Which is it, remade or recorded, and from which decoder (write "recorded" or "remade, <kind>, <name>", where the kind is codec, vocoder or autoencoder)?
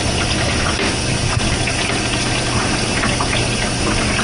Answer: recorded